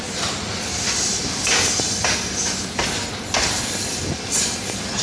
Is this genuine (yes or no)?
yes